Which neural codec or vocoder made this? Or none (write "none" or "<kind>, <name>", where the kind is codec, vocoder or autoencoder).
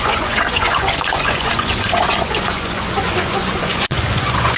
vocoder, Vocos